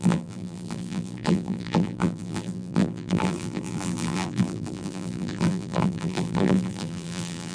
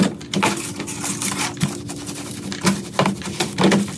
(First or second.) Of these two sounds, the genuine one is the second